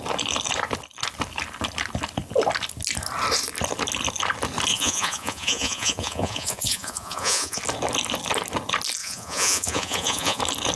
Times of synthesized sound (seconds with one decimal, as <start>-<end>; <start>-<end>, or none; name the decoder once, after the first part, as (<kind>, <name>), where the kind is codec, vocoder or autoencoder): 4.7-7.6 (vocoder, Vocos); 9.0-10.4